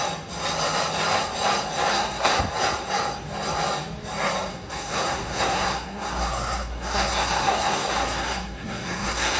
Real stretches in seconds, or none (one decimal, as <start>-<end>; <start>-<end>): 0.0-1.9; 2.4-4.5